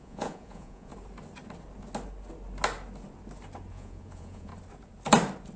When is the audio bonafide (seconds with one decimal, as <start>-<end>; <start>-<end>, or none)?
0.9-3.7; 4.5-5.6